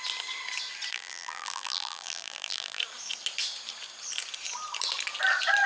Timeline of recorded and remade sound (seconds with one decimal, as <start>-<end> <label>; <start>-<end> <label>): 0.0-0.9 recorded; 0.9-2.8 remade; 2.8-5.7 recorded